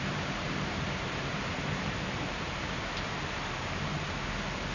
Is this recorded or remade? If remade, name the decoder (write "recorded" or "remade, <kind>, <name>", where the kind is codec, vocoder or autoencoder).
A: remade, vocoder, BigVGAN v2